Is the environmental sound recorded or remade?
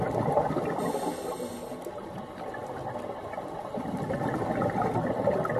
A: recorded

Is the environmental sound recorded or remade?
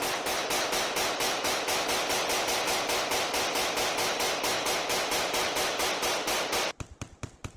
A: recorded